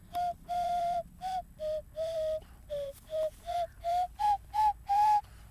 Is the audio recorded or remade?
remade